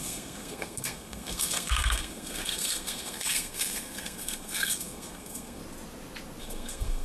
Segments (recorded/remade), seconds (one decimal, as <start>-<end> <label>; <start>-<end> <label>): 0.0-5.6 remade; 5.6-6.4 recorded; 6.4-7.0 remade